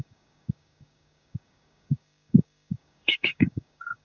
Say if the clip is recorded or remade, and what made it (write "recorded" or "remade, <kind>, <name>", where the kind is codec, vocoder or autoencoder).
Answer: remade, codec, DAC